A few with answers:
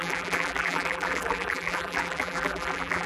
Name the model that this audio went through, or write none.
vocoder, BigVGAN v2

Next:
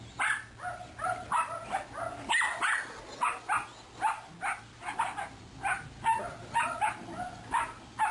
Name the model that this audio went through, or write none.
none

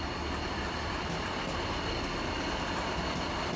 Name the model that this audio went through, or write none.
none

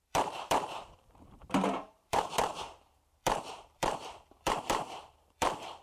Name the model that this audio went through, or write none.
vocoder, BigVGAN v2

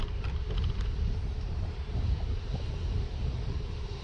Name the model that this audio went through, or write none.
vocoder, BigVGAN v2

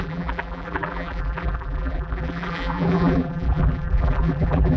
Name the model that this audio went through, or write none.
vocoder, BigVGAN v2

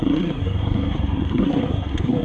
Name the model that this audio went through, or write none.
codec, SNAC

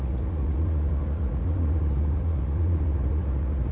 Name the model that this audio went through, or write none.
vocoder, Vocos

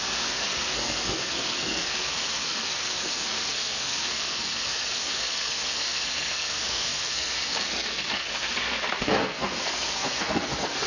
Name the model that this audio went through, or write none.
codec, SNAC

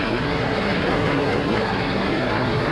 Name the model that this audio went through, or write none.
codec, SNAC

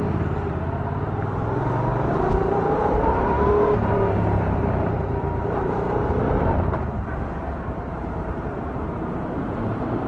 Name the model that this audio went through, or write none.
vocoder, BigVGAN v2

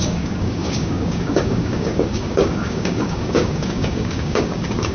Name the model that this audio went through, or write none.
codec, DAC